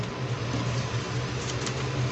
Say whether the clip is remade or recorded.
recorded